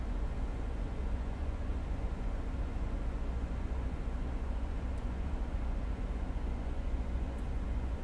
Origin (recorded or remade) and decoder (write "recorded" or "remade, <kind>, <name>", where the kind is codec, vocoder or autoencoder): remade, vocoder, Vocos